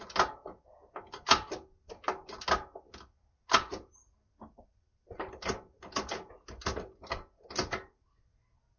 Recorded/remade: recorded